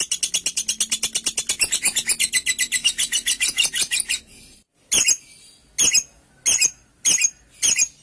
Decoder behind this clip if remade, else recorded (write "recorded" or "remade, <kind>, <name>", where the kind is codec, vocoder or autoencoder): recorded